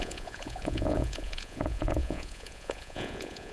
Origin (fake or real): fake